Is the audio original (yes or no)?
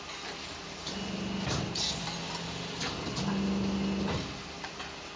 yes